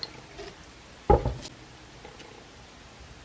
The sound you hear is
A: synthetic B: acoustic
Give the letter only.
B